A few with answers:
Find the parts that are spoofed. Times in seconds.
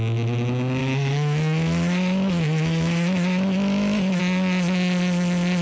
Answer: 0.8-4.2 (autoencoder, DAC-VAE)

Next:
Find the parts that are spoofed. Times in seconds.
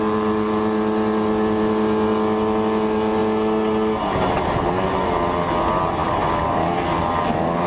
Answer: none